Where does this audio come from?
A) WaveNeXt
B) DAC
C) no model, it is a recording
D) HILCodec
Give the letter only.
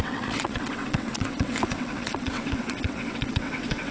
A